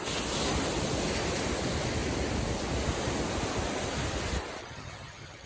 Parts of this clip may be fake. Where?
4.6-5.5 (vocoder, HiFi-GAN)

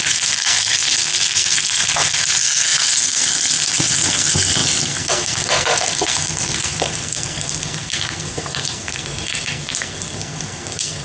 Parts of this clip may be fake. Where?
0.0-11.0 (codec, SNAC)

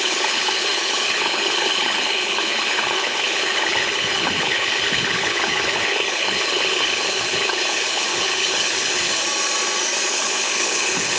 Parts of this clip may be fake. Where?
0.0-9.2 (codec, HILCodec); 10.1-11.2

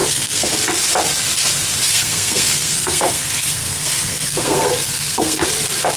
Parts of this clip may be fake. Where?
0.0-0.5 (codec, SNAC); 1.8-5.4

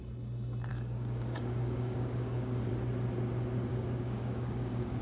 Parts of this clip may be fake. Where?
0.7-2.7 (codec, DAC); 3.7-5.0

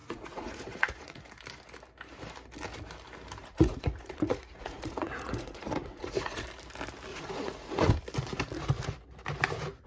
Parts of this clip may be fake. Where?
0.0-1.2 (vocoder, Vocos); 3.4-6.4; 7.1-7.9

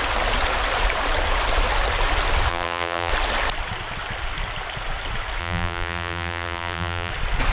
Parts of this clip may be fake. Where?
2.5-3.1 (vocoder, BigVGAN v2); 5.4-7.1